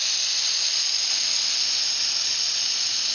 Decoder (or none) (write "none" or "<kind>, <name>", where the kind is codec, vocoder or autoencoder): none